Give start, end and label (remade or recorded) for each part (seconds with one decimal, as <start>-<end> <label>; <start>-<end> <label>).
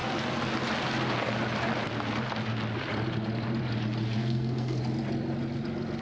0.0-4.2 recorded; 4.2-4.8 remade; 4.8-6.0 recorded